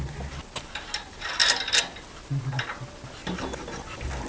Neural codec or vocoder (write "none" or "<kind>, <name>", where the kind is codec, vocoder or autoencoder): none